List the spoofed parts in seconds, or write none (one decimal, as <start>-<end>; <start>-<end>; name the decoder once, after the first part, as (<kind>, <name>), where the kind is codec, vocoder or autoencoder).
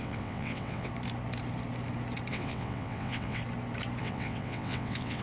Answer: 0.0-0.9 (vocoder, WaveNeXt); 2.3-3.4; 4.0-5.2